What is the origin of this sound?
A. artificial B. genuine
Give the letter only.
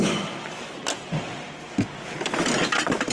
B